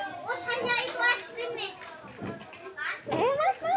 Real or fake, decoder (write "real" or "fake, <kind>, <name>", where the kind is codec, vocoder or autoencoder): real